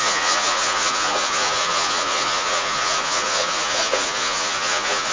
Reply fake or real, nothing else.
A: fake